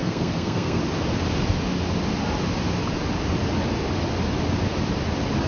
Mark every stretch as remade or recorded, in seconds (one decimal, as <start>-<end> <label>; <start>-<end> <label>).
0.0-0.8 remade; 0.8-5.5 recorded